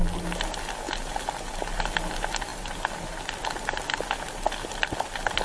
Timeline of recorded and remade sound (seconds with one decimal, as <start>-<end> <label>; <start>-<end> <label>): 0.0-5.4 recorded